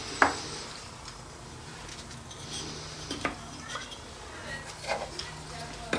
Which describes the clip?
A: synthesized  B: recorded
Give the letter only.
B